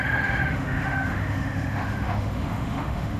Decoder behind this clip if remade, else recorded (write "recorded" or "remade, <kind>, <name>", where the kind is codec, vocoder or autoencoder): remade, autoencoder, DAC-VAE